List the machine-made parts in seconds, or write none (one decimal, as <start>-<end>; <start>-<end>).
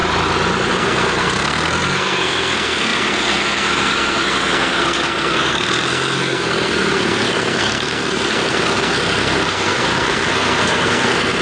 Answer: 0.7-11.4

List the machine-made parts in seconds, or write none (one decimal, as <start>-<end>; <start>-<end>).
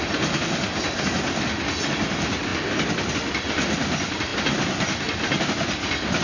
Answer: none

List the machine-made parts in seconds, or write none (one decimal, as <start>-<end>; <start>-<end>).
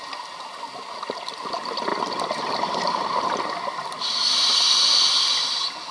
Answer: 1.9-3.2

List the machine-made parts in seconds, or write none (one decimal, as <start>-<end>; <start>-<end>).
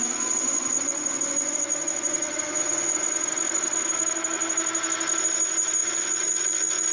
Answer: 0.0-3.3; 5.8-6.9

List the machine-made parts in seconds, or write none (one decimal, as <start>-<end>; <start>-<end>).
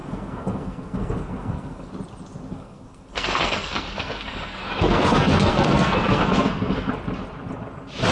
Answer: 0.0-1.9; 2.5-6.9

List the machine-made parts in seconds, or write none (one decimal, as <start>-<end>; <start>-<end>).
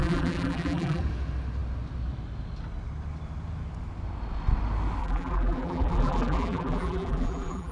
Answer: 0.0-1.0; 5.0-7.7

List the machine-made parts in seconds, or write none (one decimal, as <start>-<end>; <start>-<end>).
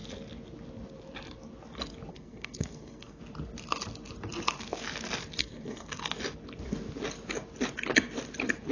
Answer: 2.1-3.2; 5.4-6.0